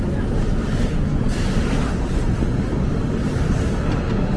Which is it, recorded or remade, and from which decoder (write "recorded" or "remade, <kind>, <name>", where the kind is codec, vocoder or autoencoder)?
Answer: recorded